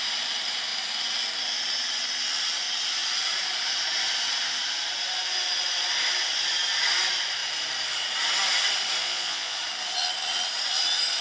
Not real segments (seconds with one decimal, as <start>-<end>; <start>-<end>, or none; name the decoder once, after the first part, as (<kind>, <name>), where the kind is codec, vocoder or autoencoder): 9.0-9.6 (vocoder, Vocos)